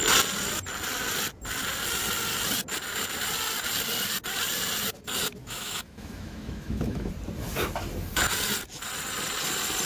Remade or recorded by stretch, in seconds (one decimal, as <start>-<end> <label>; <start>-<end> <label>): 0.0-5.4 recorded; 5.4-7.1 remade; 7.1-9.9 recorded